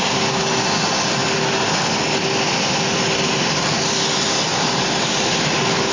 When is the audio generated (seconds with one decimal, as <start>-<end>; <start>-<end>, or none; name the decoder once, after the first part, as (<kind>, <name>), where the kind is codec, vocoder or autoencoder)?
none